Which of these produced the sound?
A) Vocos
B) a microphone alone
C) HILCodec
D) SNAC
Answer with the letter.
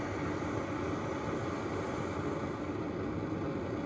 B